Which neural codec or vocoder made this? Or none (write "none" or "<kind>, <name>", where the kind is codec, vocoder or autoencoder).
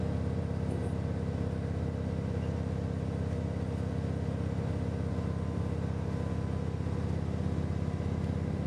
none